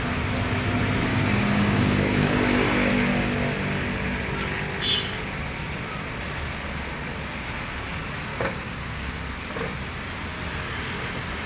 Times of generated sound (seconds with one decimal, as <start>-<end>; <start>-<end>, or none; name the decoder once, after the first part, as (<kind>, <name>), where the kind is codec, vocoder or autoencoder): 1.1-2.9 (codec, DAC); 8.3-9.1